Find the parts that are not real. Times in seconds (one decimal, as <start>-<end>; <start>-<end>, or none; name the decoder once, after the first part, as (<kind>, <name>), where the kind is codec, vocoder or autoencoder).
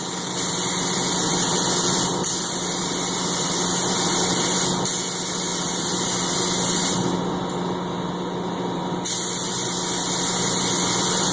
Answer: none